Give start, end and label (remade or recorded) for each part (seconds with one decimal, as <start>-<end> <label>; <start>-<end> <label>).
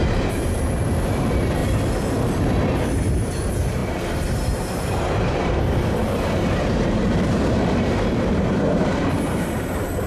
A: 0.0-1.6 remade; 1.6-2.9 recorded; 2.9-10.1 remade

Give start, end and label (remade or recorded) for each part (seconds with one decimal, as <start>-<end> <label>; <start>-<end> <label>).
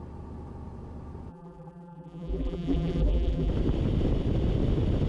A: 0.0-1.3 recorded; 1.3-3.5 remade; 3.5-5.1 recorded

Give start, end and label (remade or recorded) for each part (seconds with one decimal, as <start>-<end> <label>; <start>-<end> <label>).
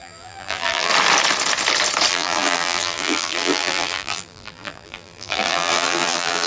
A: 0.0-0.9 remade; 0.9-2.1 recorded; 2.1-6.5 remade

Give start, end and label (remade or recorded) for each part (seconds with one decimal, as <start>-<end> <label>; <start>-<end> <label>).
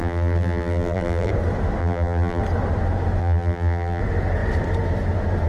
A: 0.0-1.3 remade; 1.3-1.8 recorded; 1.8-2.4 remade; 2.4-3.2 recorded; 3.2-4.0 remade; 4.0-5.5 recorded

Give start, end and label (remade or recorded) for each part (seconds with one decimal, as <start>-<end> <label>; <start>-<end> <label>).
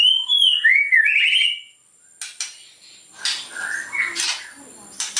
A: 0.0-5.2 recorded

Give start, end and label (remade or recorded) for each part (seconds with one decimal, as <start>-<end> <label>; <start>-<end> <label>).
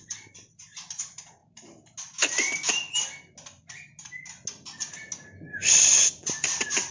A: 0.0-1.4 remade; 1.4-5.5 recorded; 5.5-6.9 remade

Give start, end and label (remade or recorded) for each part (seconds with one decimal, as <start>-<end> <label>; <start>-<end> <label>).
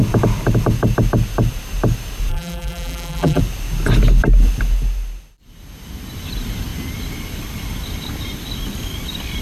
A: 0.0-2.3 recorded; 2.3-3.4 remade; 3.4-9.4 recorded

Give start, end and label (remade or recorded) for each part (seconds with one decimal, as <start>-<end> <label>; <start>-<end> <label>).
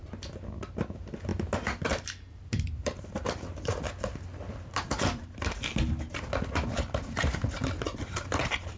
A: 0.0-1.3 recorded; 1.3-5.4 remade; 5.4-8.8 recorded